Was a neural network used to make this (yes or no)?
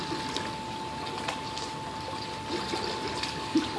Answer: no